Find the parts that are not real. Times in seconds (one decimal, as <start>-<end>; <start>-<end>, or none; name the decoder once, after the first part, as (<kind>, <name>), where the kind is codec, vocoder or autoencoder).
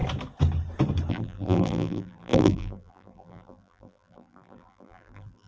1.1-5.5 (vocoder, BigVGAN v2)